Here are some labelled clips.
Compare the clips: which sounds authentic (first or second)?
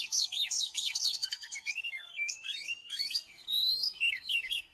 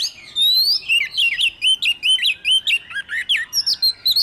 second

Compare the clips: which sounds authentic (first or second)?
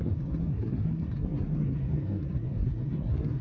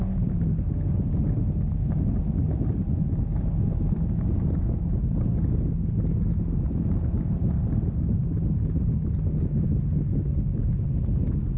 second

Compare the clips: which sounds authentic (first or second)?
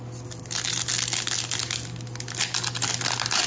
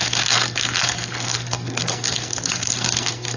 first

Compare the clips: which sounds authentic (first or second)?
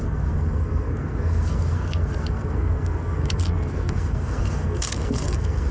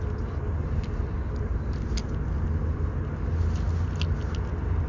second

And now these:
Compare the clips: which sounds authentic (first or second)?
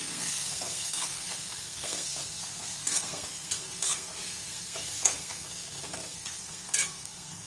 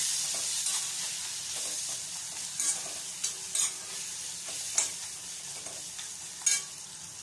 second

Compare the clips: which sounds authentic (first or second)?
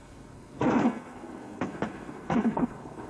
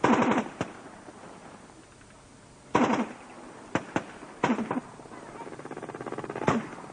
second